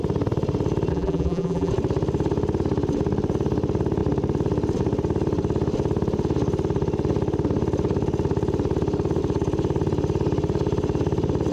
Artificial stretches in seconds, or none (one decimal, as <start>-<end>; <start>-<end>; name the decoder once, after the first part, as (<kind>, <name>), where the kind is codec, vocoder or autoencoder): 0.9-1.7 (vocoder, BigVGAN v2)